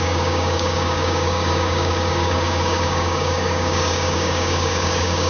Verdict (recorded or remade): remade